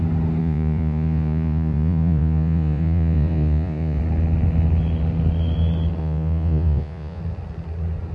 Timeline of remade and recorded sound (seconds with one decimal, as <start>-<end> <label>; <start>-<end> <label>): 0.0-0.4 recorded; 0.4-4.0 remade; 4.0-6.0 recorded; 6.0-7.2 remade; 7.2-8.1 recorded